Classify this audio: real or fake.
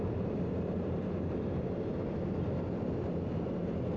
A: real